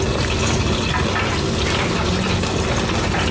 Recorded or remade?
recorded